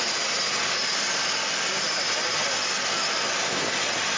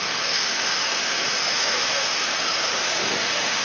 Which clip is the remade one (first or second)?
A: second